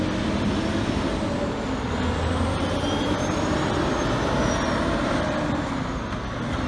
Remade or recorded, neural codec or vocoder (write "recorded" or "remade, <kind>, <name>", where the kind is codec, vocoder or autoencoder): recorded